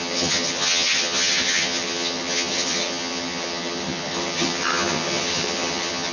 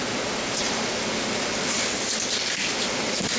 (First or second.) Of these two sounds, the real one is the second